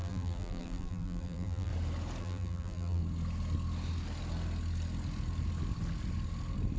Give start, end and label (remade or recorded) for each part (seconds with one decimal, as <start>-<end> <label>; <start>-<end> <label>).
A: 0.0-1.7 remade; 1.7-2.2 recorded; 2.2-3.0 remade; 3.0-6.8 recorded